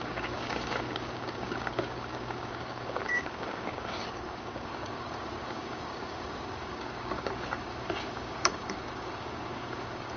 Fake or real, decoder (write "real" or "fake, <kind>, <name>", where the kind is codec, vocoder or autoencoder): fake, codec, DAC